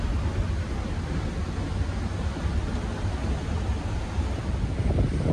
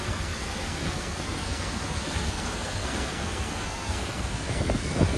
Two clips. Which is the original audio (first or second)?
first